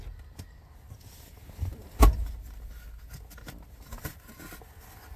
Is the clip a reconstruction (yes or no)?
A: no